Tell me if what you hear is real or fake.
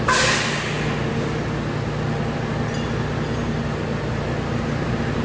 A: real